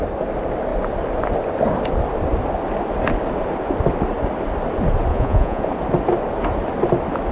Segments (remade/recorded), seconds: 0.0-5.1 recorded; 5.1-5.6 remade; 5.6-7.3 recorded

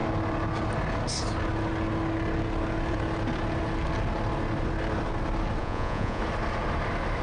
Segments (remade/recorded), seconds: 0.0-5.6 recorded; 5.6-6.2 remade; 6.2-7.2 recorded

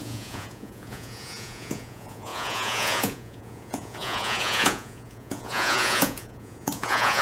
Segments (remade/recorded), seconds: 0.0-7.2 remade